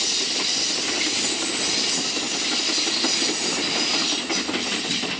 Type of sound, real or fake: real